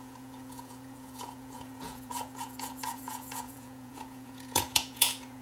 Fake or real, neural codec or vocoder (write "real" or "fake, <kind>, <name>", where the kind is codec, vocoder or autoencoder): fake, vocoder, Vocos